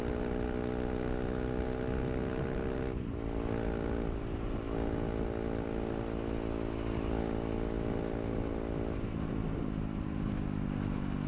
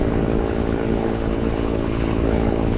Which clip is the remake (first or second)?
second